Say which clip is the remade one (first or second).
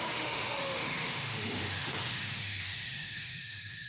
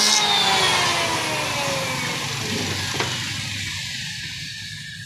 first